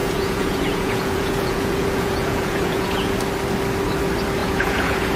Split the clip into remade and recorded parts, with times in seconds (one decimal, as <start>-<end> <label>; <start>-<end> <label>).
0.0-3.1 remade; 3.1-4.4 recorded; 4.4-5.2 remade